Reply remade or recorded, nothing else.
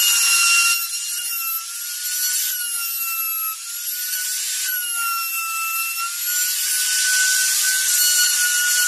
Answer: recorded